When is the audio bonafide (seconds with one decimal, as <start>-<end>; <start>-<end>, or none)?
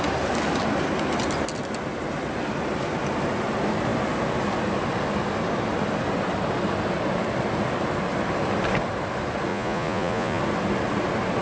0.0-9.5; 10.4-11.4